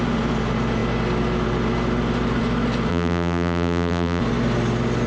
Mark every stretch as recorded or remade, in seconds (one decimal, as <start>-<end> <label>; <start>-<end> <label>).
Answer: 0.0-2.9 recorded; 2.9-4.2 remade; 4.2-5.1 recorded

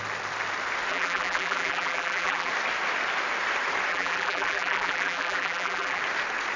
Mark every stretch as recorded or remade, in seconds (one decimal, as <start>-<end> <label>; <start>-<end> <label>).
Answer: 0.0-0.9 recorded; 0.9-2.5 remade; 2.5-3.9 recorded; 3.9-6.0 remade; 6.0-6.6 recorded

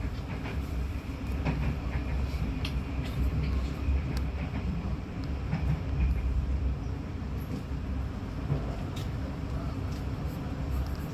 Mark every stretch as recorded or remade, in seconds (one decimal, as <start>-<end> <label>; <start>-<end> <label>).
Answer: 0.0-11.1 remade

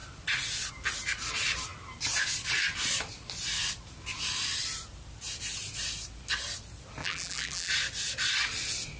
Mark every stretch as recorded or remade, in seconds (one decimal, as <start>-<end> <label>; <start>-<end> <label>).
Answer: 0.0-7.0 recorded; 7.0-7.7 remade; 7.7-9.0 recorded